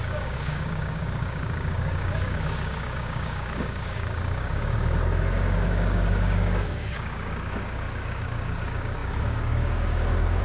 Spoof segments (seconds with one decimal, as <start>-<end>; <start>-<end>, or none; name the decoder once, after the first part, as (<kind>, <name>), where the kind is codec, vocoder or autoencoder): 0.0-10.4 (codec, DAC)